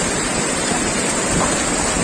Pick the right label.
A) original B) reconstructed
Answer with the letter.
A